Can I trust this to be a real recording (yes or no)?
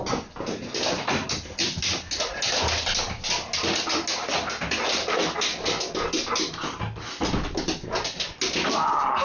yes